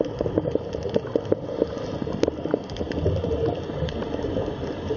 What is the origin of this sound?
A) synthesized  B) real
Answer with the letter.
B